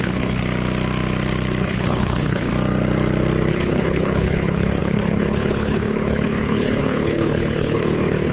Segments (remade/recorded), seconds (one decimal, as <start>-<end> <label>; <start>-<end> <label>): 0.0-0.4 remade; 0.4-1.6 recorded; 1.6-2.5 remade; 2.5-3.5 recorded; 3.5-8.3 remade